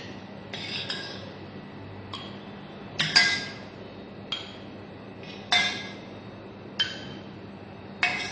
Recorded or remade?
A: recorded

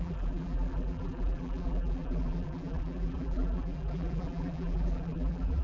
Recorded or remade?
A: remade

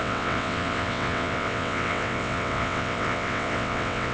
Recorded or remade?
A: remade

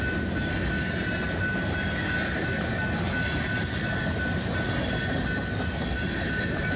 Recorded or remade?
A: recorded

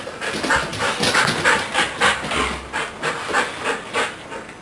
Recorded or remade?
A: recorded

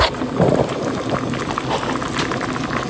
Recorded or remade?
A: recorded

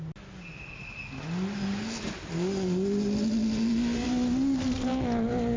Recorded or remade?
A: recorded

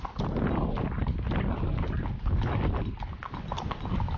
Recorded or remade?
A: recorded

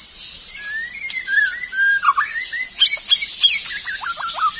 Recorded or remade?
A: recorded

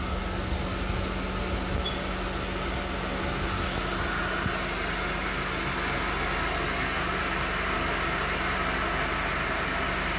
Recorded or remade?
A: recorded